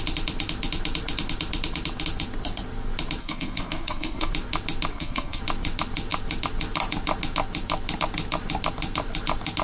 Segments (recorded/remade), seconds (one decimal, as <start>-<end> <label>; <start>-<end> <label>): 0.0-3.2 recorded; 3.2-4.3 remade; 4.3-4.9 recorded; 4.9-5.4 remade; 5.4-9.6 recorded